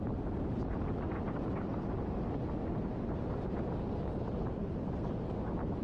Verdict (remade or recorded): remade